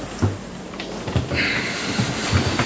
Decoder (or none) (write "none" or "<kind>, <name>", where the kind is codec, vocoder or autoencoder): none